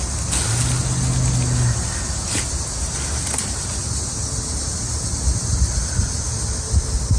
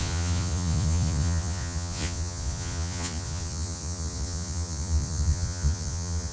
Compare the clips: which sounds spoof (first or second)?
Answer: second